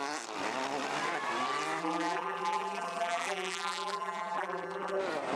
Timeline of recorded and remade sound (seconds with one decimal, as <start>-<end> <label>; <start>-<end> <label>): 0.0-1.8 recorded; 1.8-5.0 remade; 5.0-5.4 recorded